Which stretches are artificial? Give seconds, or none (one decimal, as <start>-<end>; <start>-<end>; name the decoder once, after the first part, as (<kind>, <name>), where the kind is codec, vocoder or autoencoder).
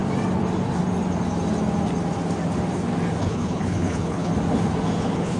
3.2-4.3 (codec, HILCodec); 5.0-5.4